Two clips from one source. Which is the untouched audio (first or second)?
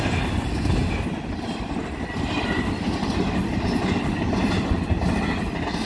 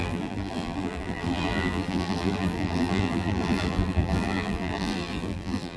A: first